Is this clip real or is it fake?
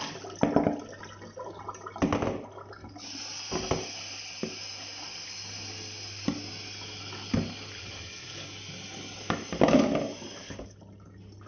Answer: real